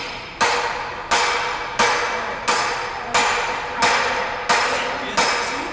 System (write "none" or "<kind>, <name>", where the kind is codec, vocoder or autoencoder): none